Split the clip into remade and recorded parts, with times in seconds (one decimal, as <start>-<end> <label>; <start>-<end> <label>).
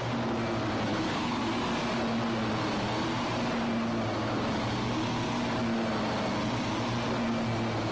0.0-0.9 recorded; 0.9-1.4 remade; 1.4-7.9 recorded